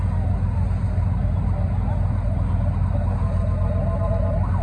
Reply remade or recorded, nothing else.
recorded